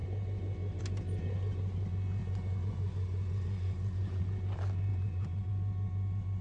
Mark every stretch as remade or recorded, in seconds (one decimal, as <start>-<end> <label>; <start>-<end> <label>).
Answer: 0.0-2.2 recorded; 2.2-4.2 remade; 4.2-4.9 recorded; 4.9-5.5 remade; 5.5-6.4 recorded